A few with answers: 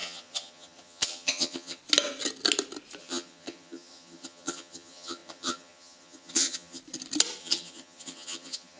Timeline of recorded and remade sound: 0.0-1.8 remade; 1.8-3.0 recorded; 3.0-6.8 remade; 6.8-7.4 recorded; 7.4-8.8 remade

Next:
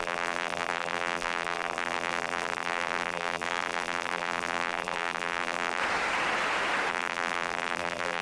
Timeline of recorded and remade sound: 0.0-5.8 remade; 5.8-6.9 recorded; 6.9-8.2 remade

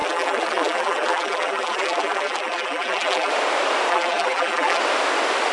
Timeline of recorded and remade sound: 0.0-3.3 remade; 3.3-3.9 recorded; 3.9-4.8 remade; 4.8-5.5 recorded

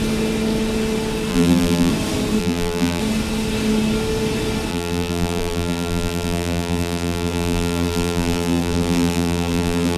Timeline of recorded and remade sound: 0.0-1.3 recorded; 1.3-1.9 remade; 1.9-2.4 recorded; 2.4-3.0 remade; 3.0-4.7 recorded; 4.7-10.0 remade